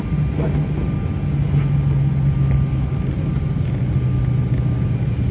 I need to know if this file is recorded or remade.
recorded